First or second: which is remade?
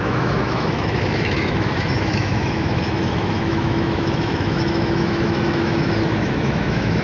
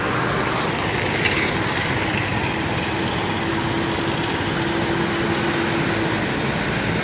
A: first